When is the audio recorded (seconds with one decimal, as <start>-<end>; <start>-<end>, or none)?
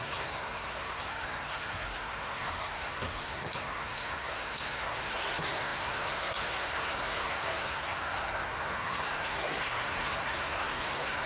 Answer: none